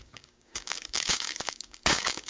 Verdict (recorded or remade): remade